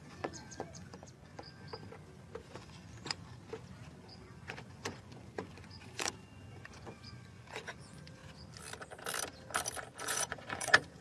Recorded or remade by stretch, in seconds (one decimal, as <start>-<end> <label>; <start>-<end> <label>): 0.0-1.7 remade; 1.7-2.5 recorded; 2.5-3.4 remade; 3.4-4.0 recorded; 4.0-8.2 remade; 8.2-10.0 recorded; 10.0-11.0 remade